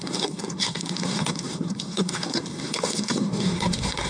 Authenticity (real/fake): fake